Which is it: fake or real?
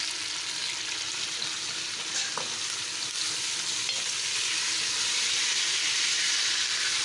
real